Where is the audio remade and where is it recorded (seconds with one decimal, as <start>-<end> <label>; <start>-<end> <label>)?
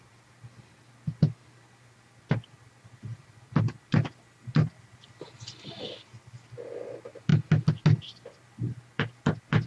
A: 0.0-9.7 recorded